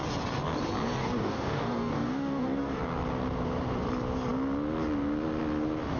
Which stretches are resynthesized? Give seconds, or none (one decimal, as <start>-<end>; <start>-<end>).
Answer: 1.0-2.8